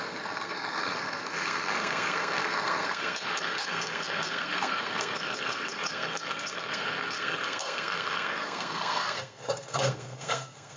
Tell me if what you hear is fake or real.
fake